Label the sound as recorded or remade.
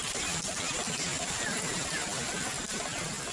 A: recorded